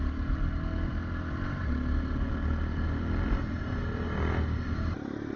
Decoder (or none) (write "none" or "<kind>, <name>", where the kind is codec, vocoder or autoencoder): none